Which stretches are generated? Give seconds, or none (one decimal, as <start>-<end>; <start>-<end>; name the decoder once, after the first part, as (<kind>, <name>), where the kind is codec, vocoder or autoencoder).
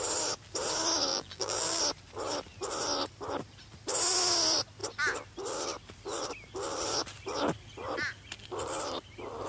1.1-1.8 (vocoder, BigVGAN v2)